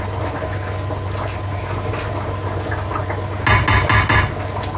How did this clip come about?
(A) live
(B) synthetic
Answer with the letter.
A